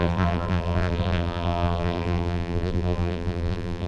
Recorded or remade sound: remade